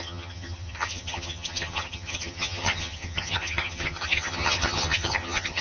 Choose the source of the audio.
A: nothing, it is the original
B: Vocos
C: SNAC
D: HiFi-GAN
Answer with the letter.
D